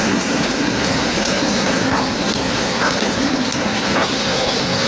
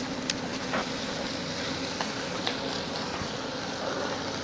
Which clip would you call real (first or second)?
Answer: second